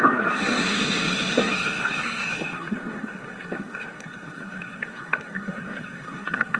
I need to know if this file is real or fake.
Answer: fake